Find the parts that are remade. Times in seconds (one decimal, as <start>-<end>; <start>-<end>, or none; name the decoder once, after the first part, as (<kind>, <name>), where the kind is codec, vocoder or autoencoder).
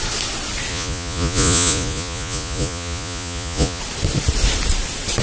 0.7-3.8 (vocoder, Vocos)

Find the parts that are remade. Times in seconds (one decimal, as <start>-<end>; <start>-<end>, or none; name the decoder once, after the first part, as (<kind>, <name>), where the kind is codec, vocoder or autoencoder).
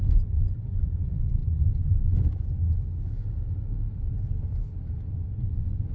0.0-2.6 (vocoder, Vocos); 5.1-5.9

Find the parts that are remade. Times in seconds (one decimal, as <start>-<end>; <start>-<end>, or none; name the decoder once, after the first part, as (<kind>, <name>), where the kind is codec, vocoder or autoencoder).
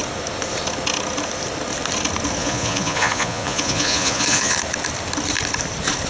2.4-4.6 (vocoder, Vocos)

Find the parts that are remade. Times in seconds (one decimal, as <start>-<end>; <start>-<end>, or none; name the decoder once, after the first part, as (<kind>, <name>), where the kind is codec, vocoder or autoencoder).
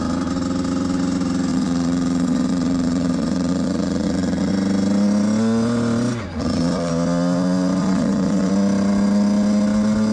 1.5-4.5 (vocoder, Vocos); 6.3-6.9; 7.8-8.5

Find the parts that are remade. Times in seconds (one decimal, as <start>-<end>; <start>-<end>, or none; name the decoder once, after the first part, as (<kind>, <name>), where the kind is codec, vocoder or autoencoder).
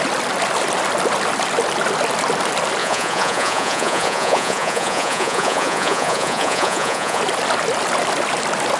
2.8-7.2 (vocoder, Vocos)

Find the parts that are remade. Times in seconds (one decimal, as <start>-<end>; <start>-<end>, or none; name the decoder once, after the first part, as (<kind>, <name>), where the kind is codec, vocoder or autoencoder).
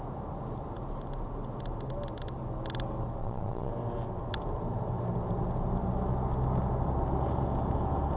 3.2-3.7 (vocoder, Vocos)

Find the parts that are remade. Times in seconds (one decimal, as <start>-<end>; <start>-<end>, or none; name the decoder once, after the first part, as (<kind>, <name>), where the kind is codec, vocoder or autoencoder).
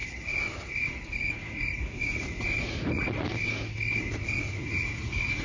0.9-3.3 (vocoder, Vocos); 4.0-5.4